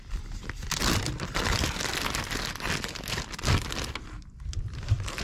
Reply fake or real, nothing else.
real